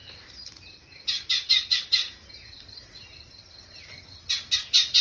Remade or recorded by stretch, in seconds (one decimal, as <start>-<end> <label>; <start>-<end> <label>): 0.0-5.0 recorded